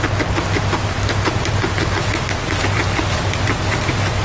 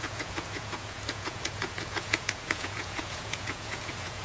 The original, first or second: first